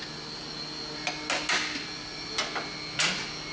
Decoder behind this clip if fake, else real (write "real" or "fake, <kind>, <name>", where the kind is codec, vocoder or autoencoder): real